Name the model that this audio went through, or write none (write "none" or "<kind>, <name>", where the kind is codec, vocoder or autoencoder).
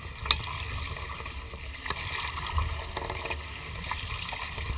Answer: none